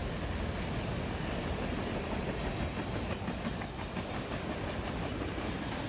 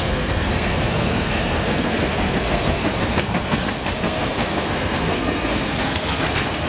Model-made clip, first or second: second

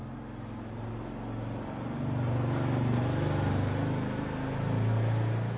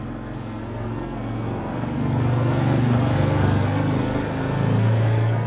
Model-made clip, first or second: second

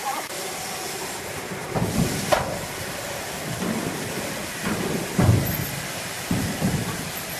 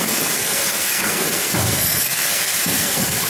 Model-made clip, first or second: second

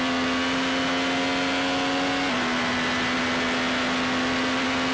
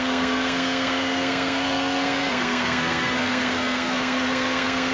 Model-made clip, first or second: second